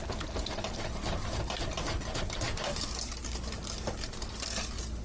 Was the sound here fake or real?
real